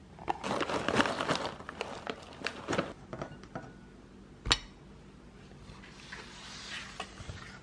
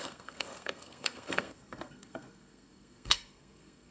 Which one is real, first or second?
first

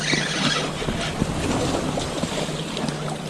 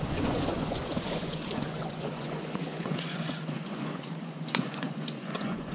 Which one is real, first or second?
first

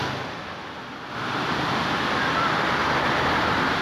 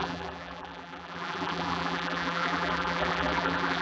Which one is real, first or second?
first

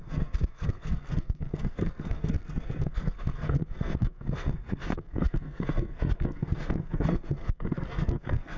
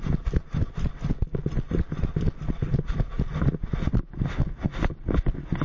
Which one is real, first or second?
second